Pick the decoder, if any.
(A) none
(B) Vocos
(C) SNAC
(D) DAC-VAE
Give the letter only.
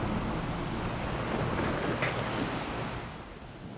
A